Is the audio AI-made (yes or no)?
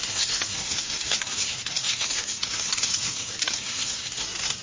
yes